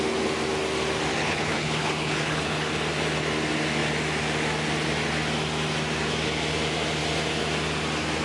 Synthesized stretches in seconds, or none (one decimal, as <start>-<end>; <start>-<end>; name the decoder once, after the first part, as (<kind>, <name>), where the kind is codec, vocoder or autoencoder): 1.1-2.7 (codec, HILCodec)